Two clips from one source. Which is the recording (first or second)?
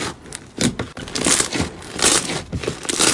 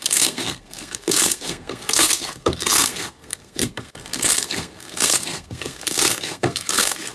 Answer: first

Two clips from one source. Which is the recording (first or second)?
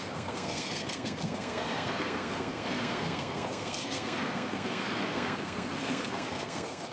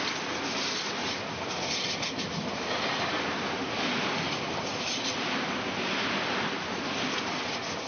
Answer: second